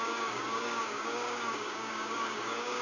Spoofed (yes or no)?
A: yes